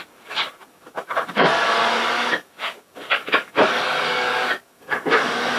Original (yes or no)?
no